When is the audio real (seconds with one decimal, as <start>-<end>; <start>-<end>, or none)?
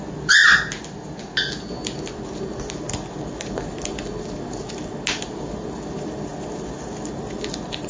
0.0-7.9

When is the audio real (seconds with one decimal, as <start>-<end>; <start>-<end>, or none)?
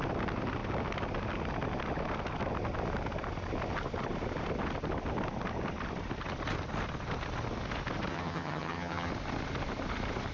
0.0-8.1; 9.1-10.3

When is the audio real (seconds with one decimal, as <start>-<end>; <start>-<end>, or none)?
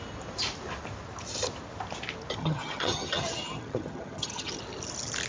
0.0-2.4; 4.6-5.3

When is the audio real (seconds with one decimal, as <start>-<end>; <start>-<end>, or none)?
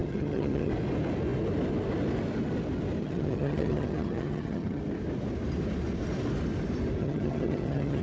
0.7-3.0; 4.8-7.0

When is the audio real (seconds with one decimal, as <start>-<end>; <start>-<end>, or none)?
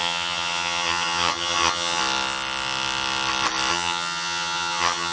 2.0-3.7